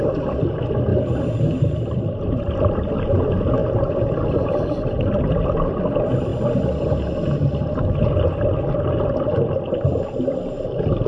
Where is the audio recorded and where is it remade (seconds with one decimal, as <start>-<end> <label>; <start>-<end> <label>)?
0.0-0.9 remade; 0.9-2.3 recorded; 2.3-3.6 remade; 3.6-4.4 recorded; 4.4-6.3 remade; 6.3-9.1 recorded; 9.1-11.1 remade

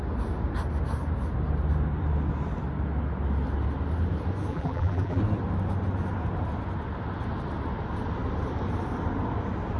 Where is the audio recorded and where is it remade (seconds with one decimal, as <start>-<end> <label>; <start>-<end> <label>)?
0.0-4.5 recorded; 4.5-5.2 remade; 5.2-9.8 recorded

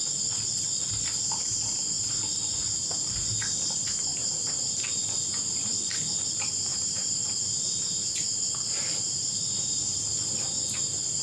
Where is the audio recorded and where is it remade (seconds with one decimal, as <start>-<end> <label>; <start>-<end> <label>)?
0.0-4.1 recorded; 4.1-6.2 remade; 6.2-6.7 recorded; 6.7-10.0 remade; 10.0-11.2 recorded

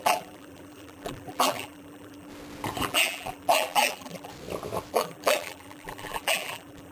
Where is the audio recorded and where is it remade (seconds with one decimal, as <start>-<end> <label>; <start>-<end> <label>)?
0.0-2.3 remade; 2.3-2.8 recorded; 2.8-4.3 remade; 4.3-4.9 recorded; 4.9-6.9 remade

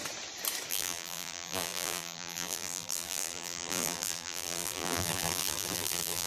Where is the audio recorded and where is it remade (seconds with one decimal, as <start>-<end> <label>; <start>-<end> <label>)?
0.0-0.7 recorded; 0.7-6.3 remade

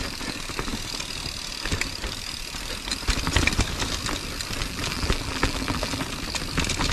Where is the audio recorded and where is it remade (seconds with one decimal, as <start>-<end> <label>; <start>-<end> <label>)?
0.0-4.6 recorded; 4.6-6.0 remade; 6.0-6.9 recorded

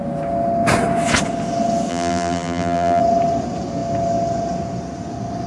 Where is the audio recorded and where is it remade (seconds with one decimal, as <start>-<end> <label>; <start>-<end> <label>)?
0.0-1.9 recorded; 1.9-3.0 remade; 3.0-5.5 recorded